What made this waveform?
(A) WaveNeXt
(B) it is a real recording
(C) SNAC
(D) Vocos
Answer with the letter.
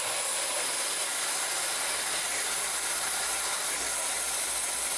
B